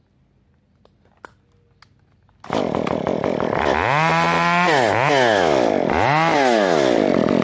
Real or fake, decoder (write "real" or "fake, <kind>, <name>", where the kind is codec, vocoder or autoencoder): real